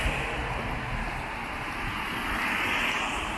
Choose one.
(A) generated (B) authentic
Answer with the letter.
A